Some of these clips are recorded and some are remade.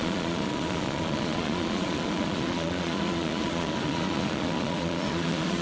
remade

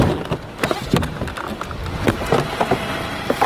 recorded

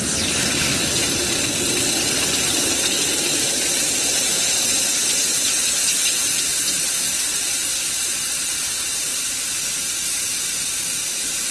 recorded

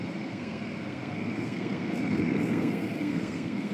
remade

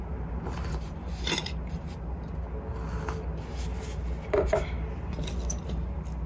recorded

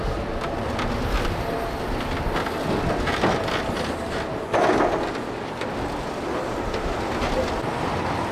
recorded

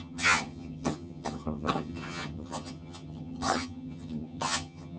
remade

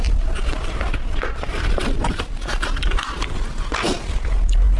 recorded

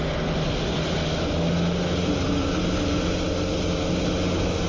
recorded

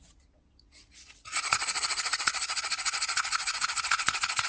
remade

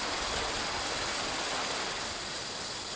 recorded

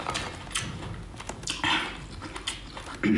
recorded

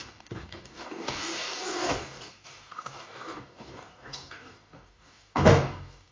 remade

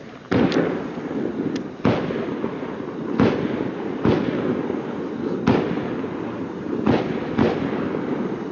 recorded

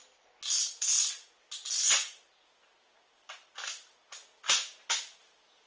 recorded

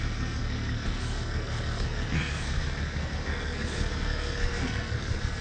remade